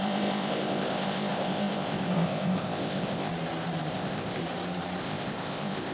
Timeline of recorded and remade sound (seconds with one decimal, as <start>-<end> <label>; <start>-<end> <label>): 0.0-3.3 remade; 3.3-3.9 recorded; 3.9-4.4 remade; 4.4-5.0 recorded; 5.0-5.9 remade